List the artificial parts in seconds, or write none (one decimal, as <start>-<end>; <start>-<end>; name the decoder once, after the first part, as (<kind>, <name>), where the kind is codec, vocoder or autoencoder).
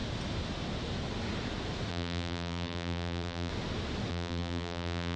1.9-3.5 (vocoder, BigVGAN v2); 4.1-5.2